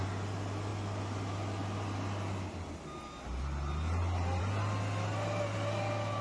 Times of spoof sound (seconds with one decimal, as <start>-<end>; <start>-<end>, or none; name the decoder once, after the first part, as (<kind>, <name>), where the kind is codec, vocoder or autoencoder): none